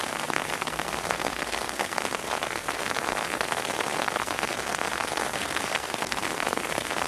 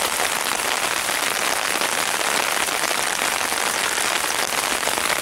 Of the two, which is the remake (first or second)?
first